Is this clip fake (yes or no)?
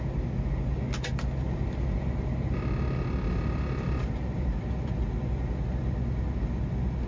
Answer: no